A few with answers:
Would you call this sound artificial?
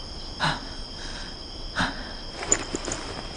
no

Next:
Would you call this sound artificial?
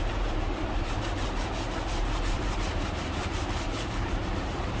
yes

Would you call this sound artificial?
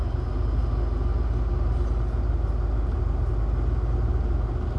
no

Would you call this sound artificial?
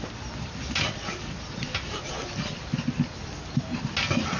no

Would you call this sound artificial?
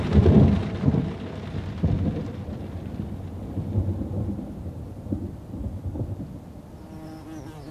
no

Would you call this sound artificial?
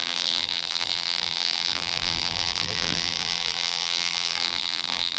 yes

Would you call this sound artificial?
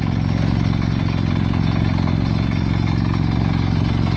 no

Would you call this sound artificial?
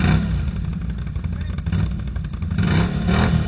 no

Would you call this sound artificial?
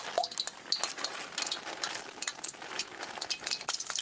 no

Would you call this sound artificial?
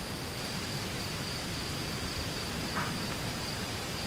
yes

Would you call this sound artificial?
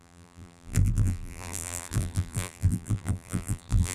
yes